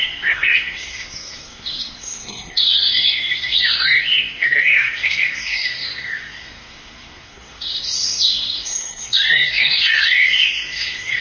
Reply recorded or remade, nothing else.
remade